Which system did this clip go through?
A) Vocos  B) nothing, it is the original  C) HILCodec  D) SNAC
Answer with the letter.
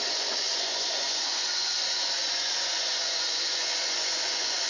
A